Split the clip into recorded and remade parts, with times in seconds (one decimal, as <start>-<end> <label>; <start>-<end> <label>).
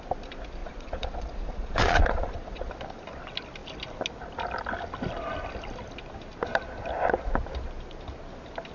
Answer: 0.0-0.6 recorded; 0.6-2.7 remade; 2.7-8.7 recorded